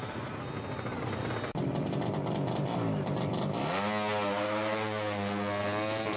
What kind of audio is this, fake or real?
real